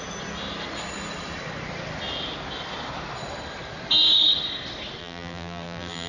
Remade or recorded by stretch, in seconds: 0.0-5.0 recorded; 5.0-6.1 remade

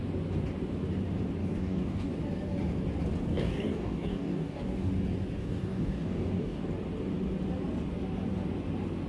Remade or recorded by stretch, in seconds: 0.0-1.4 recorded; 1.4-2.2 remade; 2.2-3.3 recorded; 3.3-4.9 remade; 4.9-5.4 recorded; 5.4-6.7 remade; 6.7-9.1 recorded

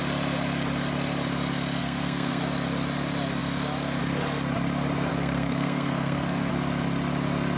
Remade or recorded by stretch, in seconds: 0.0-1.8 recorded; 1.8-2.4 remade; 2.4-5.1 recorded; 5.1-6.5 remade; 6.5-7.6 recorded

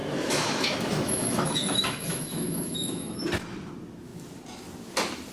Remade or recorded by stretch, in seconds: 0.0-3.2 remade; 3.2-5.3 recorded

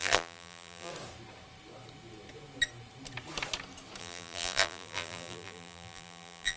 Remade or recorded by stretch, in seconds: 0.0-0.9 remade; 0.9-4.0 recorded; 4.0-6.6 remade

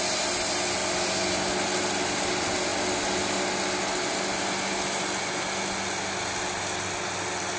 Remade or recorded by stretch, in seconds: 0.0-7.6 recorded

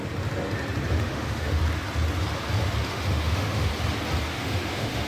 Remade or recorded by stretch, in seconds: 0.0-0.9 recorded; 0.9-1.6 remade; 1.6-2.9 recorded; 2.9-3.7 remade; 3.7-4.4 recorded; 4.4-5.1 remade

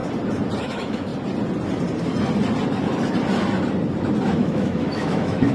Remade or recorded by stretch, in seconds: 0.0-0.6 recorded; 0.6-1.1 remade; 1.1-4.3 recorded; 4.3-5.5 remade